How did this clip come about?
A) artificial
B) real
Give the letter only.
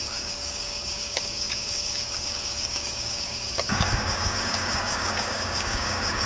A